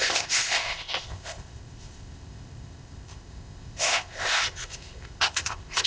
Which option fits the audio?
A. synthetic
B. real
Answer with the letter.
A